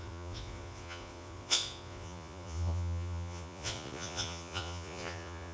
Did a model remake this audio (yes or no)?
yes